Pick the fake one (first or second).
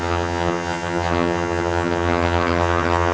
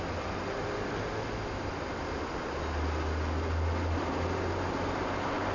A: first